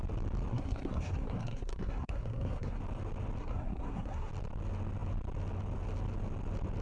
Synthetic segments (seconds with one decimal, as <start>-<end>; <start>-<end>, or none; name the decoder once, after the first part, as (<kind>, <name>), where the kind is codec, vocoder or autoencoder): 0.5-2.8 (codec, SNAC); 3.4-4.3